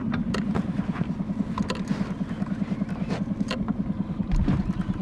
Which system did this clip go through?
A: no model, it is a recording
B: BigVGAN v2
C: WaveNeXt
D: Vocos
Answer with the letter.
A